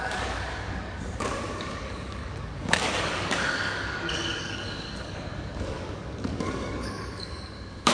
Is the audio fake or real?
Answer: fake